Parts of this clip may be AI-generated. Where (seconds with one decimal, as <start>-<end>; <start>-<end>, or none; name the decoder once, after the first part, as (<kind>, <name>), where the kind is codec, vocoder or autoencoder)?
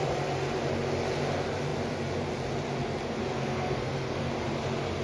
3.2-4.3 (codec, SNAC)